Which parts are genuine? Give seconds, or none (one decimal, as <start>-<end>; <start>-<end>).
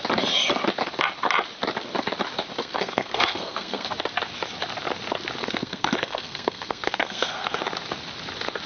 0.0-2.6; 3.9-5.4; 7.6-8.7